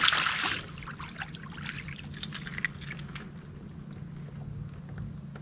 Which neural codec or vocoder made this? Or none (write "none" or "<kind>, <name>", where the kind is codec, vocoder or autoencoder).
none